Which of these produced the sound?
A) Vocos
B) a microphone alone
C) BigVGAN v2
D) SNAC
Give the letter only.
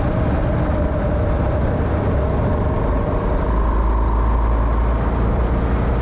B